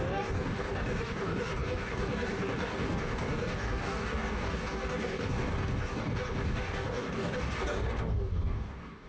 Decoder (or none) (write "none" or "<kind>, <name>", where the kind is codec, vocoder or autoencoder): codec, DAC